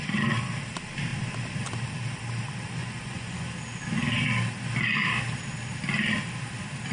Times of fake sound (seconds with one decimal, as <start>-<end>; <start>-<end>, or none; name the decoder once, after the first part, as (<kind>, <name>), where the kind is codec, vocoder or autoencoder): 2.8-3.5 (vocoder, Vocos)